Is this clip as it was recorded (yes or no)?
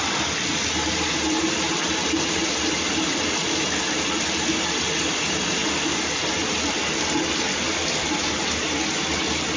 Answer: yes